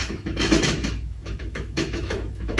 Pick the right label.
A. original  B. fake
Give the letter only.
B